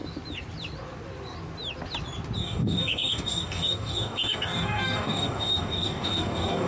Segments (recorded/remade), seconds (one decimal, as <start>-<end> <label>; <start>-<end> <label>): 0.0-2.4 recorded; 2.4-6.7 remade